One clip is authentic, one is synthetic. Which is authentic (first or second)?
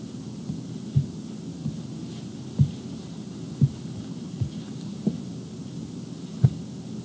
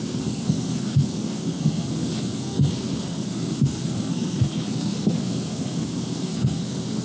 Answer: first